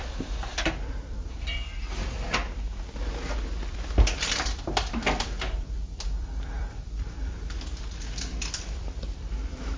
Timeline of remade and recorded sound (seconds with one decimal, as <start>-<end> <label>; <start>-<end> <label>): 0.0-2.4 remade; 2.4-3.7 recorded; 3.7-9.8 remade